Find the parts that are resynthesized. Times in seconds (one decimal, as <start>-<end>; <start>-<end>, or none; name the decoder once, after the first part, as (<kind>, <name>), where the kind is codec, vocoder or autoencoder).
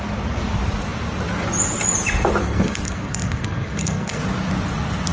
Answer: 2.4-4.2 (codec, SNAC)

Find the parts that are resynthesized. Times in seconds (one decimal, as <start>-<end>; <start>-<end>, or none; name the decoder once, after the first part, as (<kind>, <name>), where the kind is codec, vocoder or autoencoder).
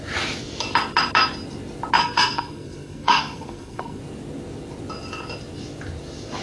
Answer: 2.0-4.0 (codec, SNAC)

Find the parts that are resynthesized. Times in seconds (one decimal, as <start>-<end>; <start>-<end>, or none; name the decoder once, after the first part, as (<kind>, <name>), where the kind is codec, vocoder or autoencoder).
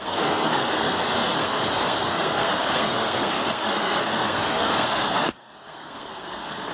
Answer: 0.0-6.7 (codec, SNAC)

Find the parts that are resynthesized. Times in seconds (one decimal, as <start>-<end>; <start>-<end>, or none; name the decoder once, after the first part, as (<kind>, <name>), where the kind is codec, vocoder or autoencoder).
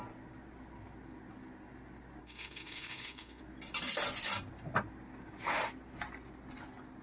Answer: 2.2-3.4 (codec, SNAC)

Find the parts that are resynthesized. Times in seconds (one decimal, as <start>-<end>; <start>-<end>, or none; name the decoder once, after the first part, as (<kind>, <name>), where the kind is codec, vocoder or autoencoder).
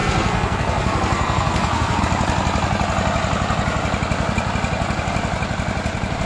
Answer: 0.0-2.0 (codec, SNAC)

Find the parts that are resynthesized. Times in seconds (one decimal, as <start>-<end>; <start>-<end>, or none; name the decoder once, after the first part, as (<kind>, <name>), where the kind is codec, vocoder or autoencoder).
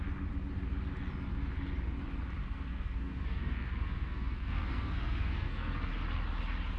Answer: 2.4-5.9 (codec, SNAC)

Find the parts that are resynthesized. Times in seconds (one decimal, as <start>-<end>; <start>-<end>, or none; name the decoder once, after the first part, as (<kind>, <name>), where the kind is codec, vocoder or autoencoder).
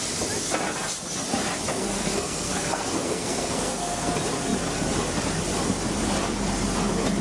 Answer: 1.7-4.1 (codec, SNAC)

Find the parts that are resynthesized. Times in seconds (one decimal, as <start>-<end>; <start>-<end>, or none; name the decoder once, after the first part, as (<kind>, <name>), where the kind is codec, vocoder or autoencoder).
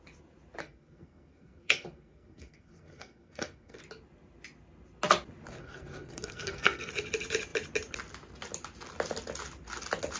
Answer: 0.6-3.8 (codec, SNAC); 5.6-6.9